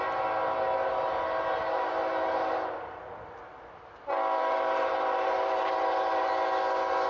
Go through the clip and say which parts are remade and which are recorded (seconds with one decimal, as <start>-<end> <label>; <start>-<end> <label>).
0.0-4.4 recorded; 4.4-6.3 remade; 6.3-7.1 recorded